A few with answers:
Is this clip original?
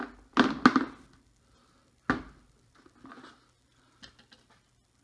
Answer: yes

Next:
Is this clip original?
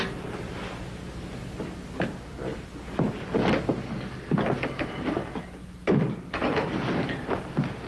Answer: yes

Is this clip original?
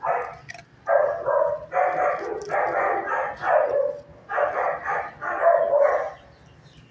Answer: yes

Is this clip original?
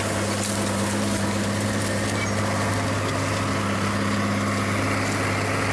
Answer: yes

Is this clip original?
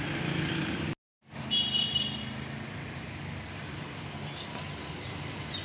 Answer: yes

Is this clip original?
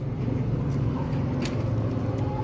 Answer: yes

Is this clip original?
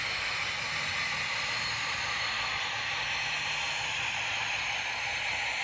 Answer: yes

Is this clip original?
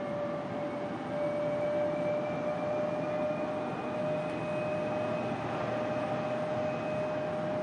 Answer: yes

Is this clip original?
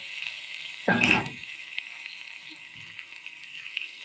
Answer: no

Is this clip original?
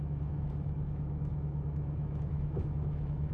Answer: no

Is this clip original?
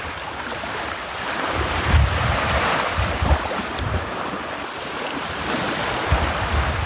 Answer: no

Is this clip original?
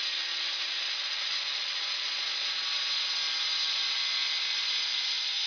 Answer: yes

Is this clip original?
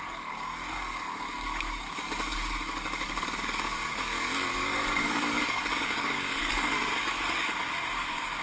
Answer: no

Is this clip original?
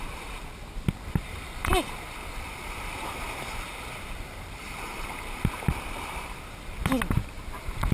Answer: yes